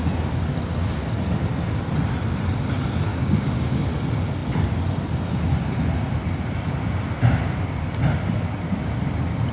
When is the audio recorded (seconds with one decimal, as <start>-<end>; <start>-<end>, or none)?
0.0-3.1; 3.9-9.5